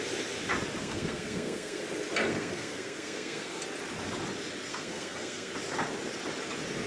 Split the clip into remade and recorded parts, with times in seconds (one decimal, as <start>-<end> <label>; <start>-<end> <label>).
0.0-0.8 recorded; 0.8-1.8 remade; 1.8-2.3 recorded; 2.3-3.6 remade; 3.6-4.7 recorded; 4.7-5.5 remade; 5.5-6.9 recorded